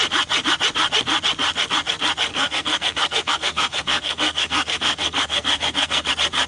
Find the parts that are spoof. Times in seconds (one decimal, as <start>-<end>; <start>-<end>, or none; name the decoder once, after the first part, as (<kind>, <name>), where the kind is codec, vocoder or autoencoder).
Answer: 2.3-6.1 (codec, SNAC)